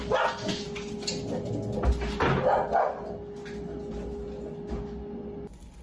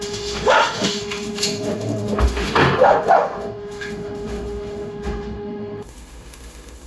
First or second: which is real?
first